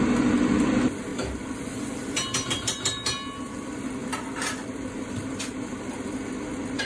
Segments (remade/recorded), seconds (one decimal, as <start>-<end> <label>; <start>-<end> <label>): 0.0-6.9 remade